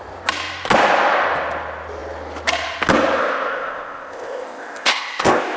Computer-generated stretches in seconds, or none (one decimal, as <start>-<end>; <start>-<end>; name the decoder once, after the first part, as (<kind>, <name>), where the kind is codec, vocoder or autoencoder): 3.2-5.6 (codec, ZipCodec)